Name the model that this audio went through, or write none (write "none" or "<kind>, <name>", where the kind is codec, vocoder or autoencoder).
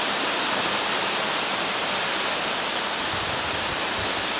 none